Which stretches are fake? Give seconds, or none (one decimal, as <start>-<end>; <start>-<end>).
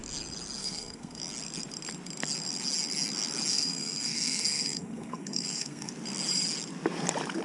0.6-1.2; 3.5-5.9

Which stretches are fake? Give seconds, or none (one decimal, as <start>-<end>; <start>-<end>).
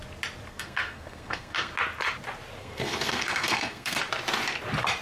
0.5-1.7; 2.6-4.0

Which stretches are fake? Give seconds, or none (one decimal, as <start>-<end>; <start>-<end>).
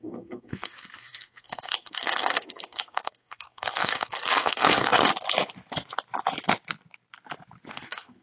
0.0-5.1; 7.7-8.2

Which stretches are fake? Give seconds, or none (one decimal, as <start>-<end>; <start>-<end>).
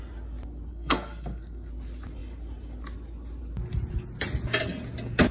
0.7-1.7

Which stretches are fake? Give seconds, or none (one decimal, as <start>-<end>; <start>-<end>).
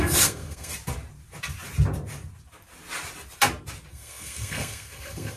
0.0-0.7; 3.9-5.4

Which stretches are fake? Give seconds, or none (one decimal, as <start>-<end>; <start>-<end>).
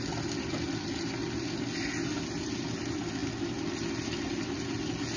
none